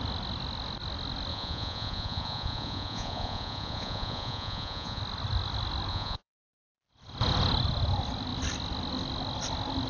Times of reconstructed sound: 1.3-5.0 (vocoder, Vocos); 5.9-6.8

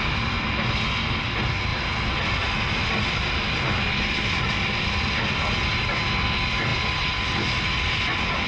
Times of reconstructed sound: none

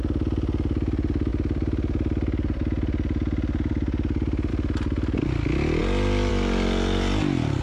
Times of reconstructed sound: none

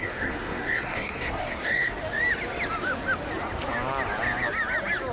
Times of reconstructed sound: 0.0-1.9 (codec, SNAC)